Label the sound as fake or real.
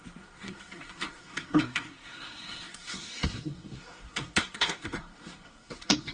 fake